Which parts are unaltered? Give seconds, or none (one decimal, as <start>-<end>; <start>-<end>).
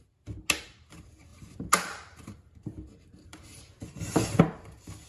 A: 0.0-1.3; 4.4-5.1